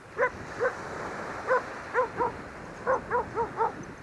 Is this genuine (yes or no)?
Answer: yes